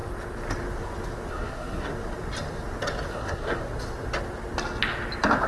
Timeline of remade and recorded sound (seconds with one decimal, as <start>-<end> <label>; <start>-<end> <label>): 0.0-1.3 recorded; 1.3-1.9 remade; 1.9-3.1 recorded; 3.1-3.6 remade; 3.6-5.5 recorded